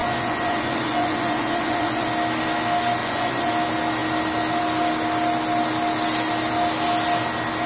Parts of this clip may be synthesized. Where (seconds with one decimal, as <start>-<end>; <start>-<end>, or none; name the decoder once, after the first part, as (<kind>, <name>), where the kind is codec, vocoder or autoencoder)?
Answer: 0.0-2.1 (vocoder, Vocos); 3.0-3.5

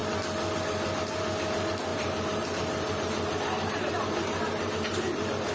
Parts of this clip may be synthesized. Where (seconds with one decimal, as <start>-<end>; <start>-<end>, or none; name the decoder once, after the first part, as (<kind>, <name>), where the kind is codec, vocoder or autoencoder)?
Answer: 1.9-5.5 (vocoder, BigVGAN v2)

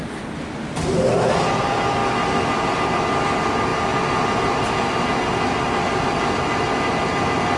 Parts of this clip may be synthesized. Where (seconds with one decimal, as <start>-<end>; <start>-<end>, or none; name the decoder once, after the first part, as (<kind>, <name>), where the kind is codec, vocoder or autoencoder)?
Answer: none